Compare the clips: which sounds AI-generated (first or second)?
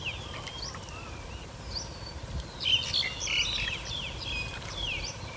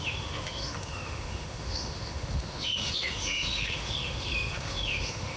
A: second